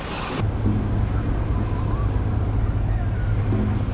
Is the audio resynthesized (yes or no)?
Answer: no